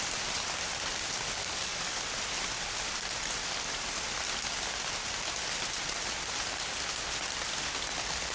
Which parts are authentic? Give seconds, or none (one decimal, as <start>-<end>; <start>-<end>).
0.0-1.4; 2.0-8.3

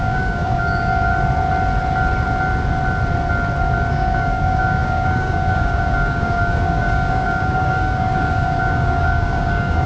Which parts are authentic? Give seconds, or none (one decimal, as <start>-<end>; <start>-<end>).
1.1-3.9

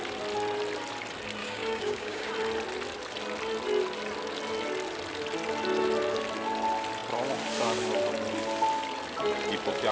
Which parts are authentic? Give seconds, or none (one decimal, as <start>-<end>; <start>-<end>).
0.0-1.4; 2.3-9.9

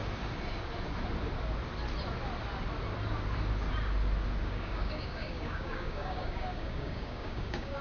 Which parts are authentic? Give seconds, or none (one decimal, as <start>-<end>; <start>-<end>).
0.0-4.4

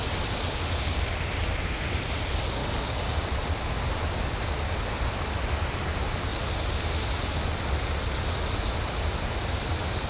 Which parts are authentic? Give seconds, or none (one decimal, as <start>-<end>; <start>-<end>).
0.0-2.6; 3.3-10.1

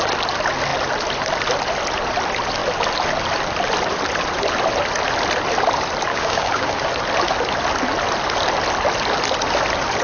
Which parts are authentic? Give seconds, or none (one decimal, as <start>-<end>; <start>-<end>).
0.0-6.1; 6.9-10.0

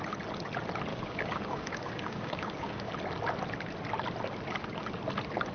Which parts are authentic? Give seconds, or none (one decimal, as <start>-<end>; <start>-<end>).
0.0-0.9; 2.9-5.5

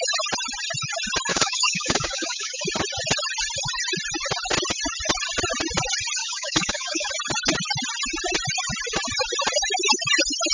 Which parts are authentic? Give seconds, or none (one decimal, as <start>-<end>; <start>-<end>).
0.0-1.3; 2.6-6.2; 7.1-10.5